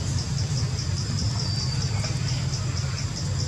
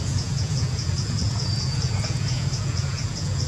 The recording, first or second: first